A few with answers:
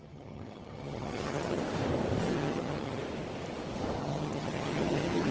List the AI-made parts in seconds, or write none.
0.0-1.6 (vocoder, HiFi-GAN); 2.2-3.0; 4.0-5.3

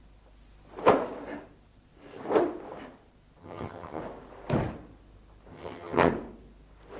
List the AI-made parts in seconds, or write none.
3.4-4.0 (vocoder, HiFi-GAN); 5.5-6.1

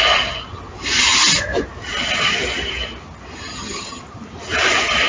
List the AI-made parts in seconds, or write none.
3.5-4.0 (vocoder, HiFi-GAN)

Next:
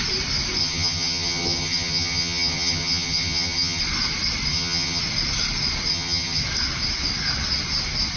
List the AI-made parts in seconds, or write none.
0.6-3.8 (vocoder, HiFi-GAN); 4.5-5.0; 5.9-6.4